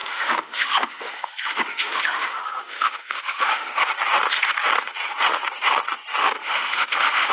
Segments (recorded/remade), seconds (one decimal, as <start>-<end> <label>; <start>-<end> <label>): 0.0-3.8 remade; 3.8-6.2 recorded; 6.2-7.3 remade

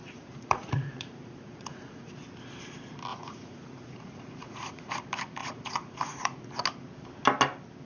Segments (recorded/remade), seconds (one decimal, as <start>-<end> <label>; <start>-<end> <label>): 0.0-2.1 remade; 2.1-3.1 recorded; 3.1-4.9 remade; 4.9-5.4 recorded; 5.4-6.4 remade; 6.4-7.9 recorded